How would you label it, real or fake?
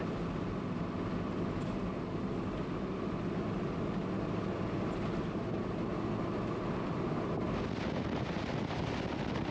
real